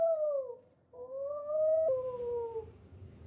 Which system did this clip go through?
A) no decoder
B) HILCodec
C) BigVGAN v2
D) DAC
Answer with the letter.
A